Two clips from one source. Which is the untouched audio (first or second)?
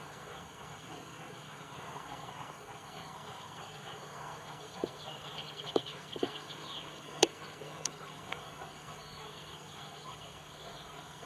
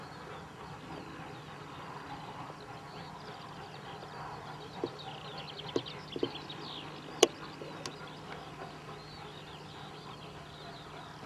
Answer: second